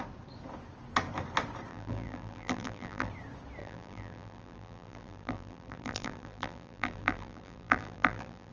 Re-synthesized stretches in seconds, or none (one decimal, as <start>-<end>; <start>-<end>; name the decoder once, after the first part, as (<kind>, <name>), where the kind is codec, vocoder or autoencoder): 1.7-3.1 (vocoder, BigVGAN v2); 3.6-8.5

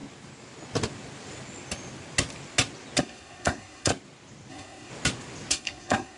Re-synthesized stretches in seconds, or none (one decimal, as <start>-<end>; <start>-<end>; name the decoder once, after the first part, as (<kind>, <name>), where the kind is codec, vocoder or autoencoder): 3.0-3.9 (codec, SNAC); 4.5-4.9; 5.5-6.2